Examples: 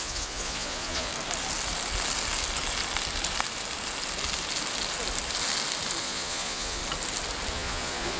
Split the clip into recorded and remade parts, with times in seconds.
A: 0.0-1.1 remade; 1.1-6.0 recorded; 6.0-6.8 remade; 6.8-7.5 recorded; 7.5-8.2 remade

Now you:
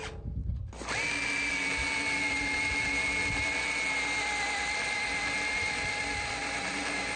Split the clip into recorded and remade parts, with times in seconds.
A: 0.0-7.2 recorded

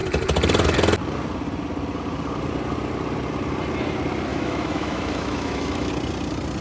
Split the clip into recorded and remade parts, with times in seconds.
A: 0.0-4.3 recorded; 4.3-5.9 remade; 5.9-6.6 recorded

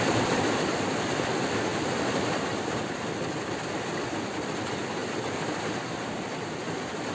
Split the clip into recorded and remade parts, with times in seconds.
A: 0.0-7.1 recorded

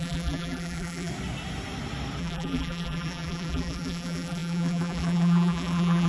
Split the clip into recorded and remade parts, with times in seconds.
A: 0.0-1.1 remade; 1.1-2.2 recorded; 2.2-6.1 remade

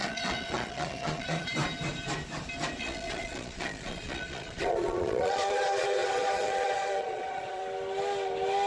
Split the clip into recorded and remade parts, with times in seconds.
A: 0.0-1.6 remade; 1.6-2.8 recorded; 2.8-7.6 remade; 7.6-8.7 recorded

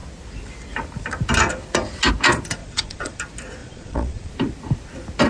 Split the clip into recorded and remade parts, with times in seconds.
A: 0.0-2.6 recorded; 2.6-3.2 remade; 3.2-3.6 recorded; 3.6-4.3 remade; 4.3-5.3 recorded

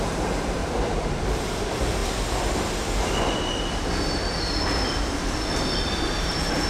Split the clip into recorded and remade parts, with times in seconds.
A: 0.0-0.6 remade; 0.6-1.2 recorded; 1.2-2.0 remade; 2.0-6.0 recorded; 6.0-6.7 remade